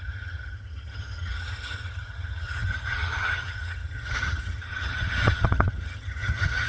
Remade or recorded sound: remade